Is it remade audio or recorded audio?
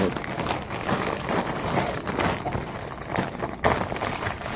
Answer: recorded